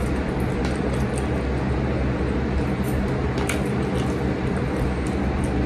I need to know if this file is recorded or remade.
recorded